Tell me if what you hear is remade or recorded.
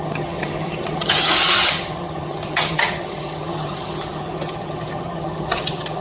remade